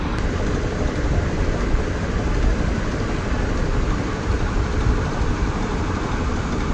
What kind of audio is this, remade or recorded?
recorded